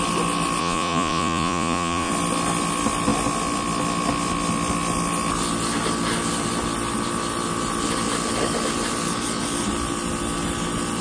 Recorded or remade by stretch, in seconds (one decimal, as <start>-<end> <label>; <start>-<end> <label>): 0.0-0.6 recorded; 0.6-2.1 remade; 2.1-11.0 recorded